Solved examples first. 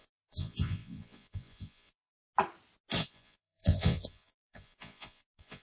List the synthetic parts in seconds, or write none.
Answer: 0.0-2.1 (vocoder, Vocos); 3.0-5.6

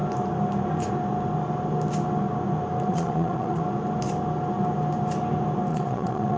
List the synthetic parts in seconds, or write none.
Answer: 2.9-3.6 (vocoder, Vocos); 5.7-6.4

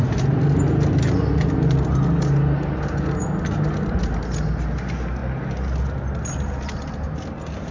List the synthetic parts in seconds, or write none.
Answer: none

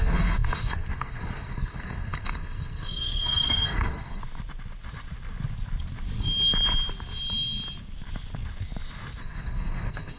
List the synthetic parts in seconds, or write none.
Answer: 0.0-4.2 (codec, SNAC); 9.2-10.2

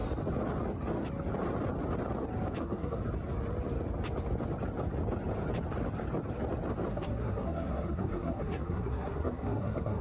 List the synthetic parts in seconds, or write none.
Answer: 2.6-3.0 (codec, SNAC); 6.9-10.0

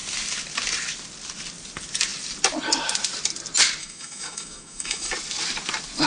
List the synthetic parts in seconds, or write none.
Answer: 3.8-5.1 (autoencoder, DAC-VAE)

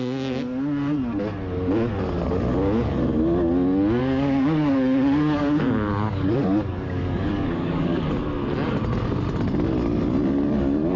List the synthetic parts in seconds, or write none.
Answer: 4.0-8.0 (codec, DAC)

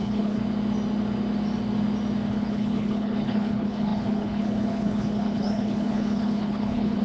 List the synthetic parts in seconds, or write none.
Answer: 0.0-0.4 (codec, HILCodec); 2.3-7.0